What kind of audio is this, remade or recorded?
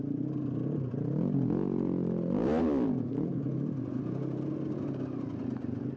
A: recorded